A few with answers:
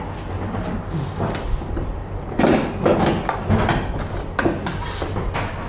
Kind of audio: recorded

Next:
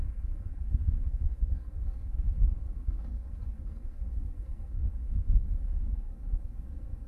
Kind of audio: remade